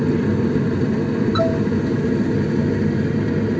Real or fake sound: real